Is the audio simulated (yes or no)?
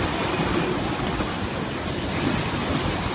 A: no